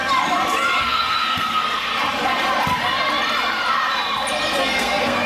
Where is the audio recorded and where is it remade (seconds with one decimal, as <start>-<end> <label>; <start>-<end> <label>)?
0.0-0.8 recorded; 0.8-1.9 remade; 1.9-4.6 recorded; 4.6-5.3 remade